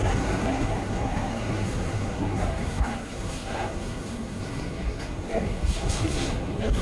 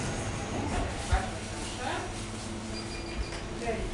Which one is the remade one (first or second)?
first